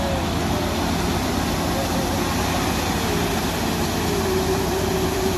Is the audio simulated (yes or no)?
no